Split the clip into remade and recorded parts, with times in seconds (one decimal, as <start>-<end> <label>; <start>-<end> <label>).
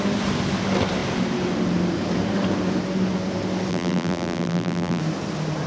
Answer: 0.0-3.7 recorded; 3.7-5.0 remade; 5.0-5.7 recorded